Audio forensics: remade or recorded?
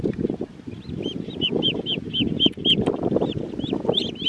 recorded